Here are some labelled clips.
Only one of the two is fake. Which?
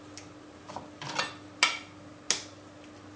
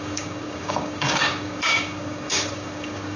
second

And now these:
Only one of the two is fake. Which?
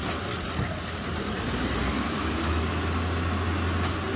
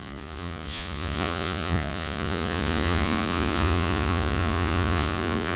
second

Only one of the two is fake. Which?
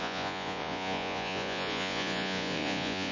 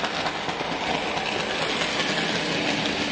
first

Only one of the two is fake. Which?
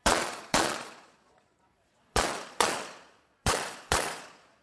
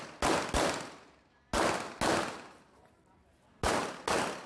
first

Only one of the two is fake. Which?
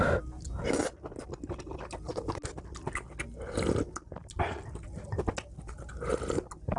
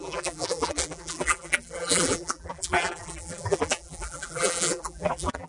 second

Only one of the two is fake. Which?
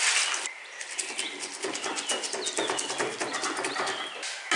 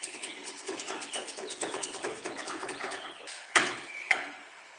second